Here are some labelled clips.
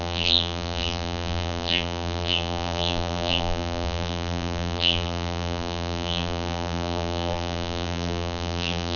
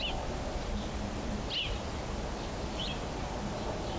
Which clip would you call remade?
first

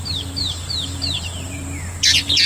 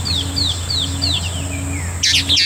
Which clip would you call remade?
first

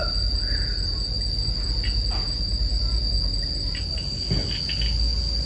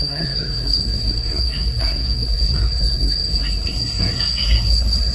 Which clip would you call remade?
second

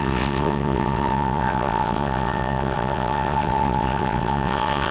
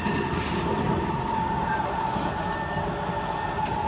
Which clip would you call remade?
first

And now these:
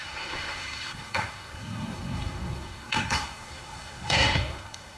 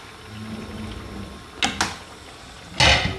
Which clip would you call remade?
first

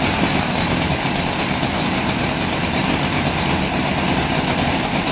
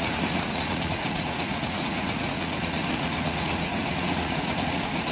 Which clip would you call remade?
second